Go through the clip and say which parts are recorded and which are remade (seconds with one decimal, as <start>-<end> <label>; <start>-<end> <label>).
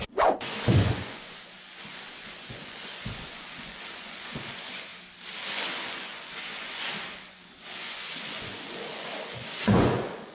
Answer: 0.0-4.9 remade; 4.9-5.5 recorded; 5.5-10.3 remade